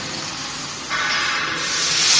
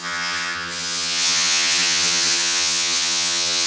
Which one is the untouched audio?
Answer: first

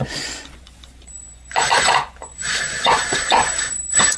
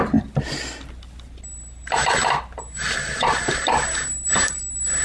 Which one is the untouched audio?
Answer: second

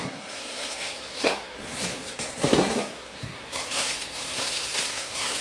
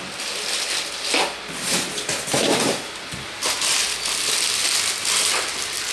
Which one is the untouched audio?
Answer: second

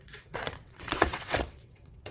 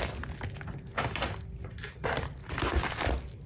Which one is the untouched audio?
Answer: second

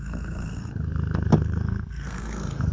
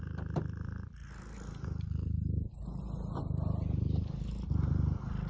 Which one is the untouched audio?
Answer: second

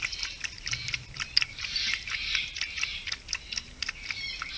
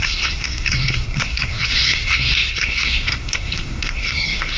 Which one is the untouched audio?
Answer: first